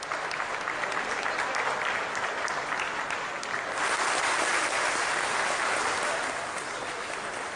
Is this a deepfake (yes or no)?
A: no